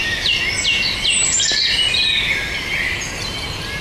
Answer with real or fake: real